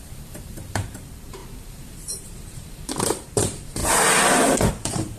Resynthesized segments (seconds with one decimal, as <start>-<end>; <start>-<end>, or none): 0.0-3.8; 4.7-5.2